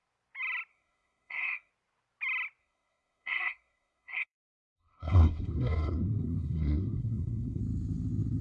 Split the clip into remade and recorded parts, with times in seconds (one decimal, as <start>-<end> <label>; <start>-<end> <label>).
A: 0.0-0.7 recorded; 0.7-1.7 remade; 1.7-2.6 recorded; 2.6-7.6 remade; 7.6-8.4 recorded